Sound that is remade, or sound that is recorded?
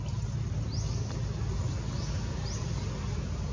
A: recorded